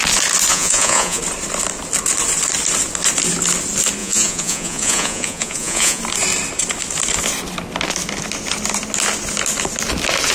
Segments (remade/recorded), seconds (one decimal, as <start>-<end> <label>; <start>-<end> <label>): 0.0-0.5 recorded; 0.5-1.2 remade; 1.2-4.0 recorded; 4.0-6.0 remade; 6.0-10.3 recorded